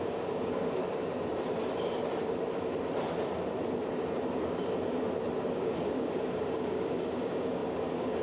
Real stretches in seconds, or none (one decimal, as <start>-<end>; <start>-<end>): 0.8-5.5